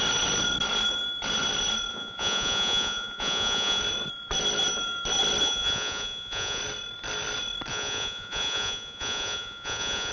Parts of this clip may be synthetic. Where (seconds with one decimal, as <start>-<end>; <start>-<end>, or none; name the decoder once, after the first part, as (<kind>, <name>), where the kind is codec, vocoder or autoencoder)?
1.9-3.8 (vocoder, Vocos); 5.4-6.6; 7.7-10.1